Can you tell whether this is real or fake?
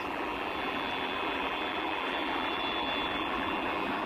fake